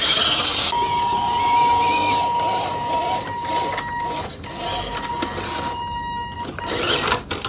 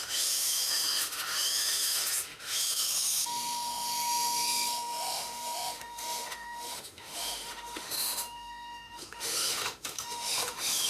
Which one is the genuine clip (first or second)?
first